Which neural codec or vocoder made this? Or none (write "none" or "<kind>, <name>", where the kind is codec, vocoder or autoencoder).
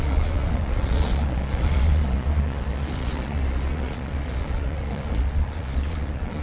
vocoder, Vocos